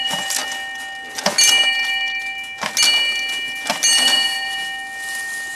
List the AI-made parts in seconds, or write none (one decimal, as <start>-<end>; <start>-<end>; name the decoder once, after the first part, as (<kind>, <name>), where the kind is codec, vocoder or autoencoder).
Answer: 0.0-0.4 (vocoder, BigVGAN v2); 3.7-4.6